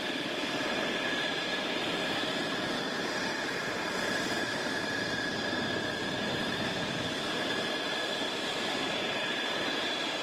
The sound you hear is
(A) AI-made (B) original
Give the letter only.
A